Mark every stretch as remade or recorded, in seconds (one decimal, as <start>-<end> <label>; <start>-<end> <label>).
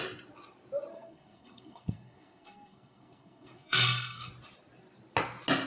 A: 0.0-0.9 recorded; 0.9-4.3 remade; 4.3-5.7 recorded